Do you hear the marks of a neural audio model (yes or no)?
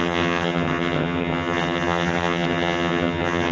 yes